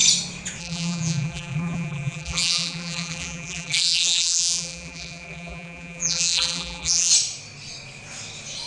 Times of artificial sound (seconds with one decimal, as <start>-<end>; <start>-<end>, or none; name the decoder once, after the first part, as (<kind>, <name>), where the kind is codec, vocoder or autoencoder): 0.6-7.1 (vocoder, BigVGAN v2)